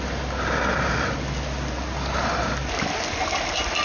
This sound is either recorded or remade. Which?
recorded